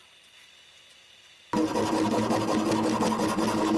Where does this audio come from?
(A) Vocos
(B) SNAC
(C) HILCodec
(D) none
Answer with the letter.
D